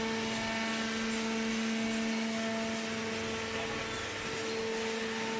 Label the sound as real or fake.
real